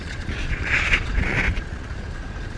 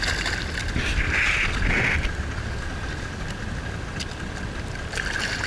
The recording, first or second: second